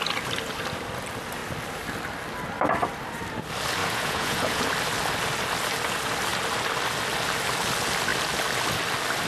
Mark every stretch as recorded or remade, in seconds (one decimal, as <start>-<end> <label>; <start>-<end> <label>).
0.0-3.8 recorded; 3.8-4.6 remade; 4.6-9.3 recorded